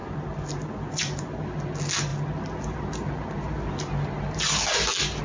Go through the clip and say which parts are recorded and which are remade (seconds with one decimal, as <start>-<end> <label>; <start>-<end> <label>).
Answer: 0.0-5.2 recorded